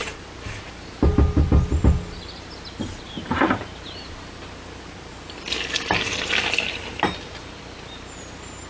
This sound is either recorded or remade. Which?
recorded